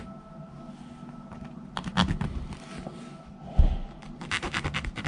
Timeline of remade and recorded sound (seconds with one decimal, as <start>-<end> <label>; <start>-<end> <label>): 0.0-5.1 recorded